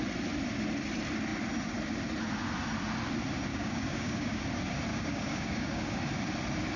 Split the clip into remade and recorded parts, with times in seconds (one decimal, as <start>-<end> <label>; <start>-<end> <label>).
0.0-3.5 recorded; 3.5-4.4 remade; 4.4-4.9 recorded; 4.9-6.0 remade; 6.0-6.8 recorded

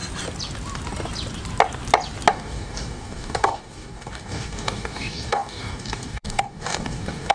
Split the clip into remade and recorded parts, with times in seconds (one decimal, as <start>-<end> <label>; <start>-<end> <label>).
0.0-2.3 recorded; 2.3-7.3 remade

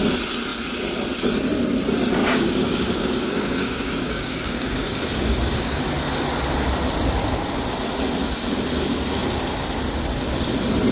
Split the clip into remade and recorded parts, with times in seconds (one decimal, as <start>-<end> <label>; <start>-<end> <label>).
0.0-2.2 recorded; 2.2-5.8 remade; 5.8-10.9 recorded

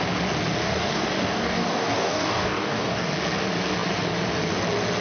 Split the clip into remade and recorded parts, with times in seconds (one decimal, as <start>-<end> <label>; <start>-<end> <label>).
0.0-0.6 recorded; 0.6-3.1 remade; 3.1-5.0 recorded

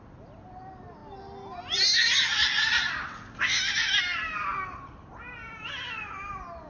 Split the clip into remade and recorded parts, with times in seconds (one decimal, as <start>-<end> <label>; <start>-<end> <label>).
0.0-6.7 recorded

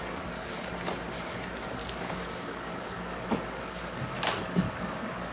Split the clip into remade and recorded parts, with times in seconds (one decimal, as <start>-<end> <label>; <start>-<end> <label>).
0.0-0.7 remade; 0.7-1.8 recorded; 1.8-5.3 remade

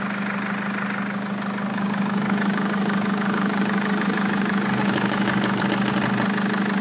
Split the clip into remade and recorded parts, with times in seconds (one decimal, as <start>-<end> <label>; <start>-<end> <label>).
0.0-1.7 recorded; 1.7-5.6 remade; 5.6-6.8 recorded